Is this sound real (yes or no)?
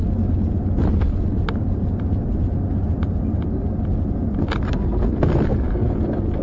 yes